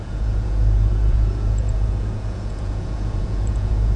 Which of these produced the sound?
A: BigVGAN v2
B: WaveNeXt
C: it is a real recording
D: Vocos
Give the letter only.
D